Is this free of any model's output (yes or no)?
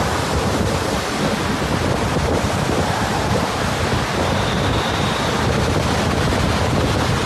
yes